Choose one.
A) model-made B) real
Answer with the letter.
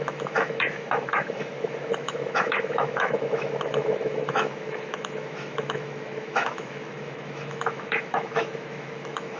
A